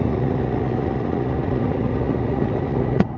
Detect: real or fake fake